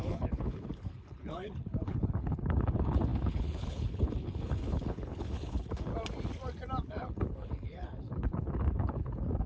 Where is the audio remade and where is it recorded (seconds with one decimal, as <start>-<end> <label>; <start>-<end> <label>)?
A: 0.0-5.9 remade; 5.9-6.9 recorded; 6.9-9.5 remade